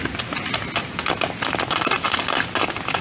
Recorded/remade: recorded